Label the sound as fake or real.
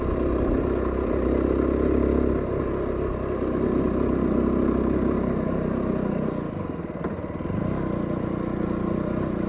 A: fake